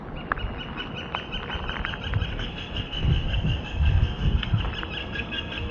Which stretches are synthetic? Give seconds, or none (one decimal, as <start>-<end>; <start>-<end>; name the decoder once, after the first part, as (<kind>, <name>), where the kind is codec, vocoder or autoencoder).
2.3-4.6 (codec, SNAC); 5.0-5.7